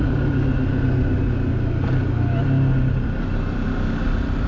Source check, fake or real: real